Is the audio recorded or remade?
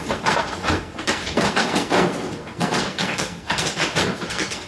remade